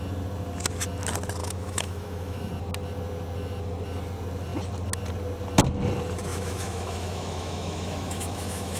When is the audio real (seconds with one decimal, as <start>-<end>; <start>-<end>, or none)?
0.0-1.4; 2.5-6.3